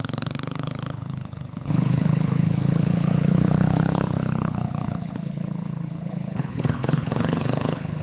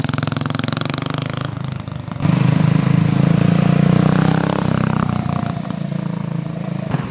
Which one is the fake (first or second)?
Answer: first